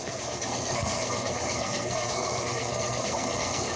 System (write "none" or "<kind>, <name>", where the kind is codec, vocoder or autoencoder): codec, SNAC